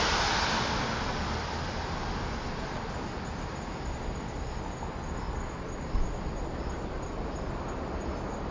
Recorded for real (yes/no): yes